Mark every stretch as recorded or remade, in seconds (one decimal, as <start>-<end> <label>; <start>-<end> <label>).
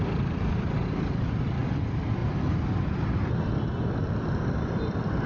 0.0-2.2 recorded; 2.2-5.3 remade